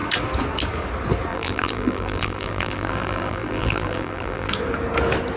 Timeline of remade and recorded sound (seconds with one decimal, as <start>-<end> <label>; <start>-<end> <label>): 0.0-1.3 recorded; 1.3-4.5 remade; 4.5-5.4 recorded